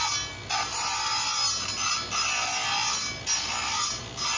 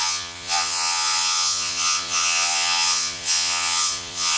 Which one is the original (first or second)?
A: first